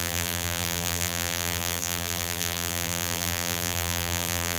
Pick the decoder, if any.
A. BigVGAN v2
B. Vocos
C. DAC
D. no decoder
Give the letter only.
A